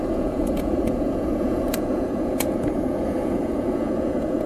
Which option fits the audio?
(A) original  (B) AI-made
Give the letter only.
B